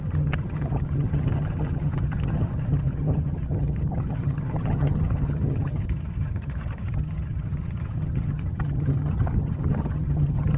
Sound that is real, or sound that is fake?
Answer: fake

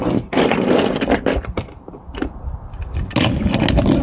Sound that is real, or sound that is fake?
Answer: real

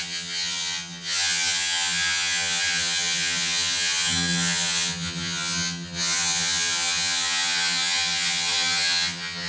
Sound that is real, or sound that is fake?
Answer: fake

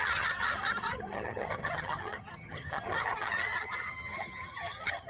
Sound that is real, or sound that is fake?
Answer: fake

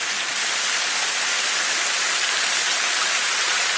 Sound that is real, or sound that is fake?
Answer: real